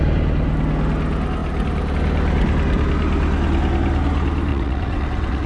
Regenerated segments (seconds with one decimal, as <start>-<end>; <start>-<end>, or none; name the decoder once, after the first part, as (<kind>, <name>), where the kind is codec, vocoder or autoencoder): 4.5-5.5 (vocoder, WaveNeXt)